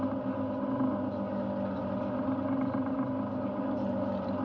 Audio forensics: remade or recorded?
recorded